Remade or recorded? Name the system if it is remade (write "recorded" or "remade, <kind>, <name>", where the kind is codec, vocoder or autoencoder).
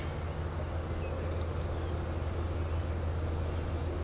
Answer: recorded